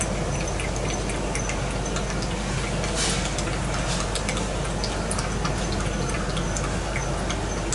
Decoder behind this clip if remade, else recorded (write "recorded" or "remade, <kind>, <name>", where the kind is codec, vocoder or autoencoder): recorded